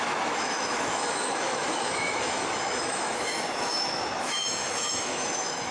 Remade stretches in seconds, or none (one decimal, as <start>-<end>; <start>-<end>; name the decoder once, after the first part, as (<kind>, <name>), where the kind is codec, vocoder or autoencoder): 0.0-5.7 (autoencoder, DAC-VAE)